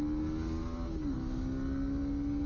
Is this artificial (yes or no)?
no